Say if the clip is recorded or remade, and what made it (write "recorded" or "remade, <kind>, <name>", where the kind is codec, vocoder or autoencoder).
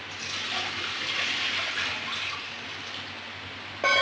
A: recorded